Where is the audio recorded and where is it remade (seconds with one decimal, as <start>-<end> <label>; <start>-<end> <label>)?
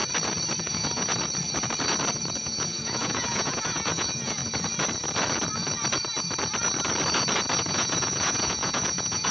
0.0-0.6 recorded; 0.6-1.1 remade; 1.1-2.4 recorded; 2.4-4.4 remade; 4.4-7.6 recorded; 7.6-9.3 remade